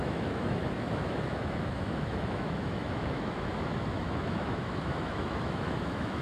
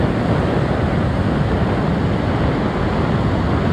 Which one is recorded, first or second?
second